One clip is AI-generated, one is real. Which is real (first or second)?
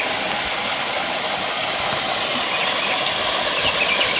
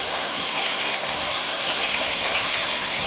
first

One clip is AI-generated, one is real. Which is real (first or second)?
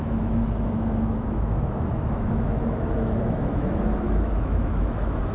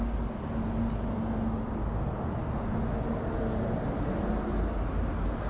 second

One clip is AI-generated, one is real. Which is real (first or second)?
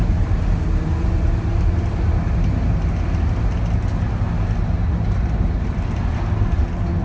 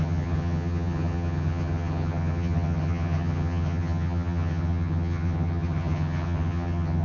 first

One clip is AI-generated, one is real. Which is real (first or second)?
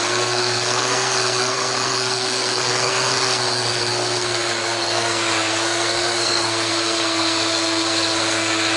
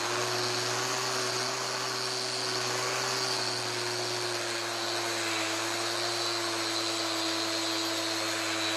second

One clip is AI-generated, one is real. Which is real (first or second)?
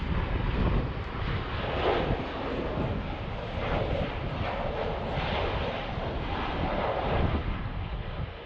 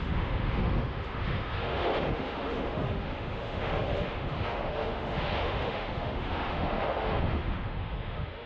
first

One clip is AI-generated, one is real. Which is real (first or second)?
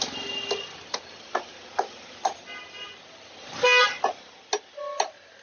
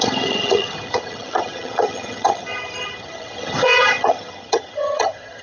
first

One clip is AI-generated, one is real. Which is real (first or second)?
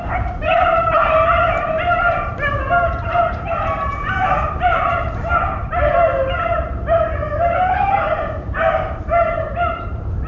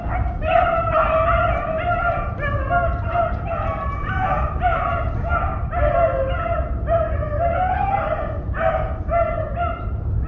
second